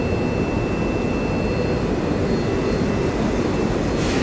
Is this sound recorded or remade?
recorded